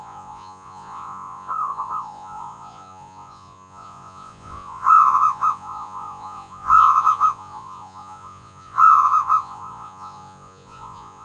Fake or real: fake